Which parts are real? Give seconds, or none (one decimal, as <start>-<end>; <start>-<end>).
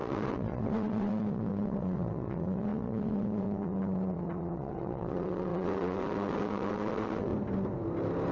7.3-8.3